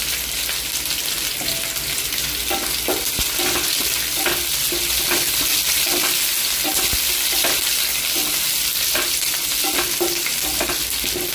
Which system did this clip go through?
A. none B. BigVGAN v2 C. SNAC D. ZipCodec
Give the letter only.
A